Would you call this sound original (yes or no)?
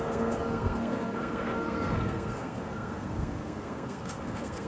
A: no